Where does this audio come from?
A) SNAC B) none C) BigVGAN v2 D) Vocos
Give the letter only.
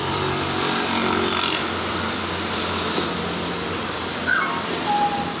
B